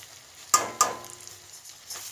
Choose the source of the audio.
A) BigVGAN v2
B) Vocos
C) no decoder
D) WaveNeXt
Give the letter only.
C